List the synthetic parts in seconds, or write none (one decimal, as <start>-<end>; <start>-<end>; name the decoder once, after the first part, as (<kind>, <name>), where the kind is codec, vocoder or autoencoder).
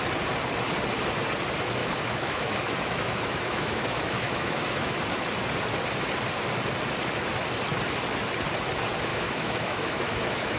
1.8-4.9 (autoencoder, DAC-VAE); 9.1-10.6